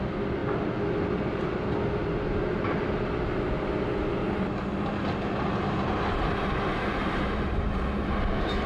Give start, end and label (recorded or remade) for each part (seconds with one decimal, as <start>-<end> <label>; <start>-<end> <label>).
0.0-6.7 recorded; 6.7-7.8 remade; 7.8-8.7 recorded